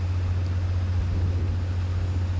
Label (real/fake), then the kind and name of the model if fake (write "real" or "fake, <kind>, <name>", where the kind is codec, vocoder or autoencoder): real